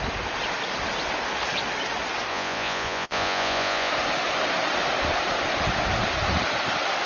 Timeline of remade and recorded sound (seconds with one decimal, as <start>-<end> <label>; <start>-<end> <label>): 0.0-2.3 recorded; 2.3-3.9 remade; 3.9-7.1 recorded